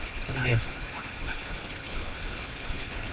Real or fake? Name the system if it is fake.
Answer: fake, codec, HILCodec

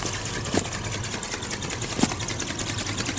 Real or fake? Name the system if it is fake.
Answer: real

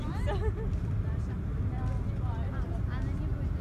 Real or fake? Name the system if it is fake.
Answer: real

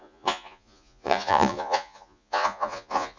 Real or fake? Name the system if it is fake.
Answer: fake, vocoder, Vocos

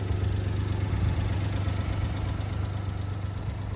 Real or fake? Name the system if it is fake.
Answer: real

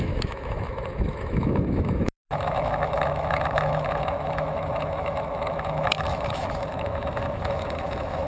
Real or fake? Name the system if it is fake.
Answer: fake, autoencoder, DAC-VAE